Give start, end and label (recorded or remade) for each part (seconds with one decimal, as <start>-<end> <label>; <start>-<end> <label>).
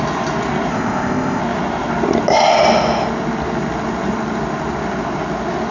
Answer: 0.0-0.7 recorded; 0.7-1.4 remade; 1.4-5.7 recorded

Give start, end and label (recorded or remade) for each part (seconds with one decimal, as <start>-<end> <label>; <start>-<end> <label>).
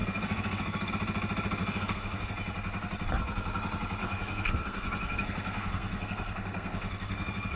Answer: 0.0-0.9 remade; 0.9-1.6 recorded; 1.6-2.3 remade; 2.3-4.0 recorded; 4.0-7.6 remade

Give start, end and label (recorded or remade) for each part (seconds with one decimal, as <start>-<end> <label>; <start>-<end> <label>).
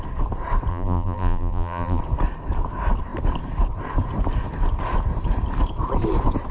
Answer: 0.0-0.7 recorded; 0.7-2.0 remade; 2.0-6.5 recorded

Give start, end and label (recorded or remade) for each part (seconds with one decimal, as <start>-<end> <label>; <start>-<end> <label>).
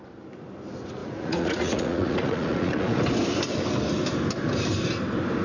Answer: 0.0-1.0 recorded; 1.0-3.0 remade; 3.0-5.4 recorded